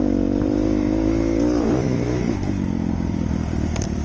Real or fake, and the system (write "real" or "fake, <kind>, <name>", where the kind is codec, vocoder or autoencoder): fake, vocoder, BigVGAN v2